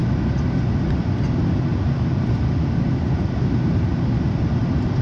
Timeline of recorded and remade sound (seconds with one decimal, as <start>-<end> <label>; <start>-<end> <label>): 0.0-3.0 recorded; 3.0-3.9 remade; 3.9-4.6 recorded; 4.6-5.0 remade